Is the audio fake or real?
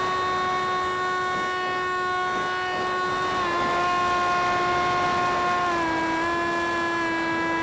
real